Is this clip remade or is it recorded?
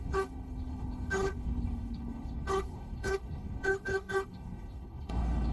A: remade